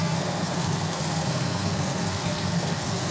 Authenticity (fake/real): fake